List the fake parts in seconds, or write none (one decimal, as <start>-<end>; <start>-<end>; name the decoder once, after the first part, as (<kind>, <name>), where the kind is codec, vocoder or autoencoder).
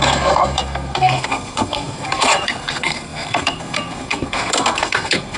0.0-5.4 (codec, SNAC)